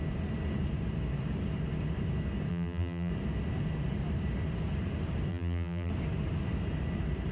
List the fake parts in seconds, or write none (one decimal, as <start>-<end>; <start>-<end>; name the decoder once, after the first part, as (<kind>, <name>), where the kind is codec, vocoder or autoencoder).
2.5-3.1 (vocoder, BigVGAN v2); 5.3-5.9